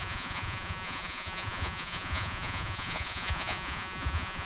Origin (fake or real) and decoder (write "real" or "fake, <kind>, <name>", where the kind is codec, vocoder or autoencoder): fake, vocoder, Vocos